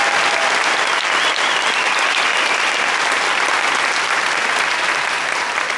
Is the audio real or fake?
real